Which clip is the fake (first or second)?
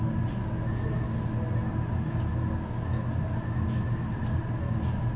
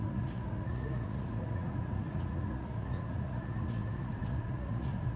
second